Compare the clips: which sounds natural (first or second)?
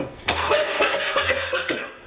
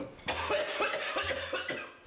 second